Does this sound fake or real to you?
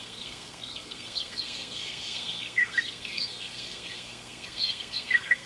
fake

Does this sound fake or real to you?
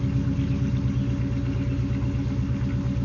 real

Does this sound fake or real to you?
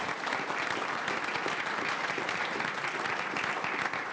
real